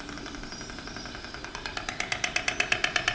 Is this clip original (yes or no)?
yes